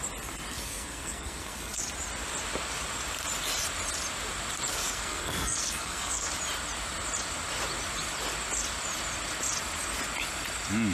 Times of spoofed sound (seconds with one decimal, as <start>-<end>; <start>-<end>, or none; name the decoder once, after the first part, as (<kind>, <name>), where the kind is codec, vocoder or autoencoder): 0.5-1.8 (codec, SNAC); 4.7-6.3